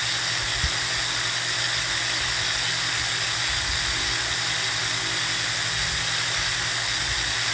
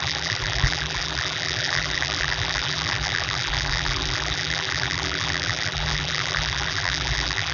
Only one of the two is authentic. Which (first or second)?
first